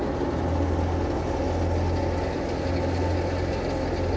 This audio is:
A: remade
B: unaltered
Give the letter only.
B